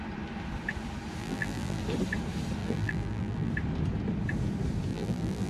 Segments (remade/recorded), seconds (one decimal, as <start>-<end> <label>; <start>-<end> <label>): 0.0-1.2 recorded; 1.2-1.8 remade; 1.8-2.6 recorded; 2.6-3.5 remade; 3.5-4.9 recorded; 4.9-5.5 remade